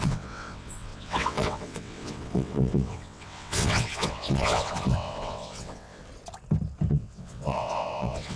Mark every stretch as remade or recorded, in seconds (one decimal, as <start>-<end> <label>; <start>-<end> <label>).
0.0-6.0 remade; 6.0-6.9 recorded; 6.9-8.4 remade